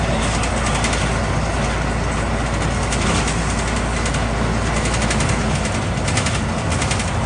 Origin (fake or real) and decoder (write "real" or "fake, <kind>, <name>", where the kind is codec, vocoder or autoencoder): real